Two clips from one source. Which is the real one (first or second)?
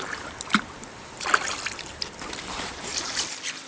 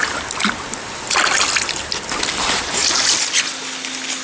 second